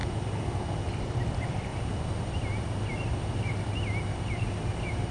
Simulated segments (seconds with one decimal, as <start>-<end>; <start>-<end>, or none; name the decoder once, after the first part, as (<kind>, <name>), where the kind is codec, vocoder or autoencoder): 0.9-1.7 (vocoder, BigVGAN v2)